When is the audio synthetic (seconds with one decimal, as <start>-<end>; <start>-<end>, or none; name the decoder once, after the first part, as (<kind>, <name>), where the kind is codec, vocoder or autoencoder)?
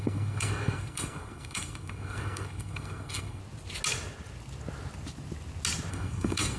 0.0-3.4 (codec, SNAC); 5.9-6.6